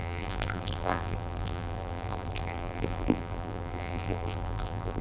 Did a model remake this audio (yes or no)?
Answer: yes